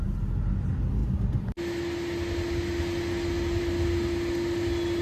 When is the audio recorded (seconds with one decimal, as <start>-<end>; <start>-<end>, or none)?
0.0-5.0

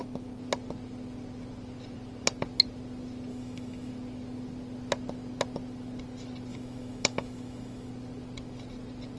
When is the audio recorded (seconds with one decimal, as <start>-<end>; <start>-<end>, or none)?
0.0-3.3; 3.9-6.5; 7.9-9.2

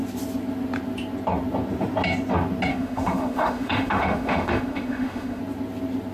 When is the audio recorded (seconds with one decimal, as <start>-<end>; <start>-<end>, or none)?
0.0-2.7; 5.4-6.1

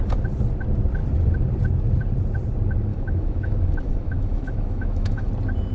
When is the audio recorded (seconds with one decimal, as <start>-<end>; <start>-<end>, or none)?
0.0-2.9; 5.3-5.7

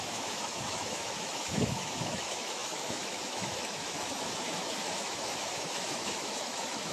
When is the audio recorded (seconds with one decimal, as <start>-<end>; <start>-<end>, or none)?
none

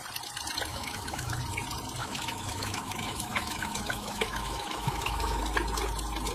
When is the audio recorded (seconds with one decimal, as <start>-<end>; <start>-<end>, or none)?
0.0-0.7; 1.4-2.0; 5.4-6.3

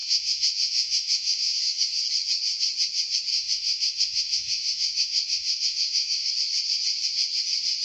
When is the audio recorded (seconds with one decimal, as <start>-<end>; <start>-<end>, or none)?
2.0-3.3; 6.3-7.8

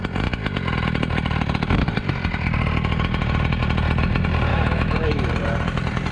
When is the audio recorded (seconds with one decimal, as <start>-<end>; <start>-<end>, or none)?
0.0-4.5; 5.3-6.1